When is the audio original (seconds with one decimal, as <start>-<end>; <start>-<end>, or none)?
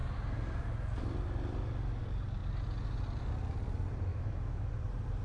0.0-4.1; 4.7-5.2